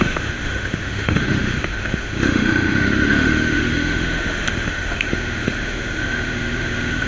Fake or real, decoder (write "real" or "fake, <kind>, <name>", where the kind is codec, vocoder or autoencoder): fake, autoencoder, DAC-VAE